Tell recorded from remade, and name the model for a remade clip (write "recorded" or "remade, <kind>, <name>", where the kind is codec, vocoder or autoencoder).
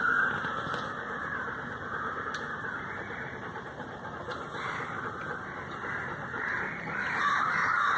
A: remade, vocoder, BigVGAN v2